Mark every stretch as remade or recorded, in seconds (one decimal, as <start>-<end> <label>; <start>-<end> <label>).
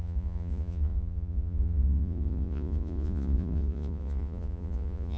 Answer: 0.0-5.2 remade